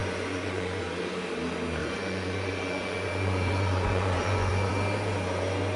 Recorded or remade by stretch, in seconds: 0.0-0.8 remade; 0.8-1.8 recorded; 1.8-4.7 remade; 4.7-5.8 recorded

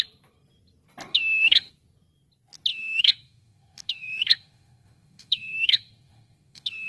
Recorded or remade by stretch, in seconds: 0.0-1.1 recorded; 1.1-1.7 remade; 1.7-2.7 recorded; 2.7-6.9 remade